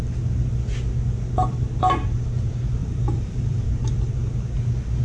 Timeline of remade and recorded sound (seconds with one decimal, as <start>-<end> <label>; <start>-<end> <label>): 0.0-2.8 recorded; 2.8-3.6 remade; 3.6-5.0 recorded